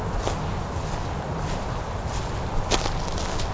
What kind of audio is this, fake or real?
real